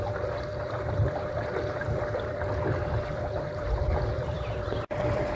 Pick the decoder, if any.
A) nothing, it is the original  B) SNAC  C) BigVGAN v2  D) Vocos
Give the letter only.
C